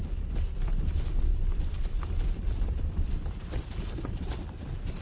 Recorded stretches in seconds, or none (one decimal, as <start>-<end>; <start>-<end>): 0.0-1.3; 4.3-5.0